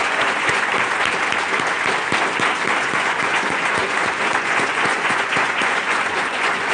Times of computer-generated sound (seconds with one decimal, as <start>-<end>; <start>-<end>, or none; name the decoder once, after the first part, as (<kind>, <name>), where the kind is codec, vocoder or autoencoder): 0.0-0.7 (vocoder, Vocos); 2.8-6.7